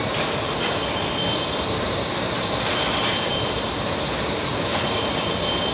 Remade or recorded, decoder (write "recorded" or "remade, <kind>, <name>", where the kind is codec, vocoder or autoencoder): recorded